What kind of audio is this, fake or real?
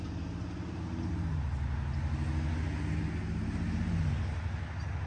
real